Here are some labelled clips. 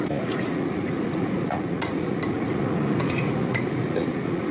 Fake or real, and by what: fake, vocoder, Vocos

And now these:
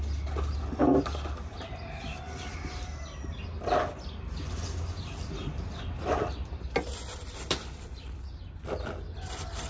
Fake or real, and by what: real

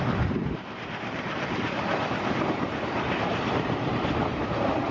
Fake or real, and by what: fake, vocoder, BigVGAN v2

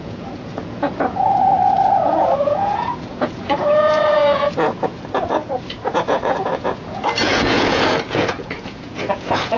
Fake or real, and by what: fake, vocoder, Vocos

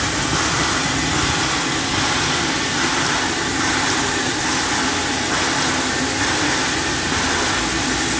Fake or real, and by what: real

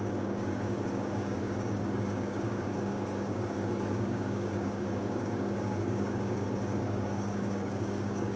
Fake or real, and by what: fake, codec, DAC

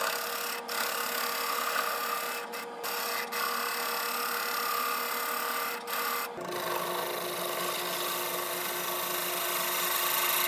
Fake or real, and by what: real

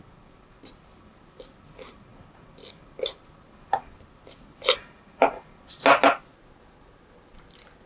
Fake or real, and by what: real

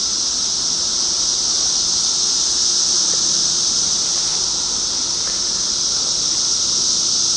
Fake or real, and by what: real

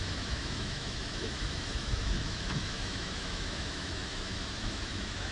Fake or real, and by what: fake, autoencoder, DAC-VAE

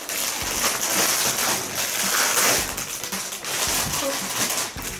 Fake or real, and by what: real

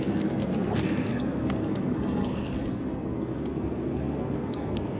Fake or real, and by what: fake, codec, SNAC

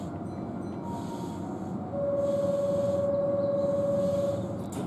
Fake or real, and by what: real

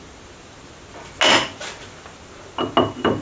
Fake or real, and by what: real